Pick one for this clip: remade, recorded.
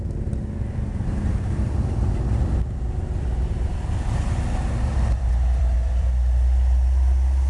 remade